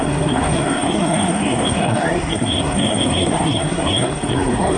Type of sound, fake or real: fake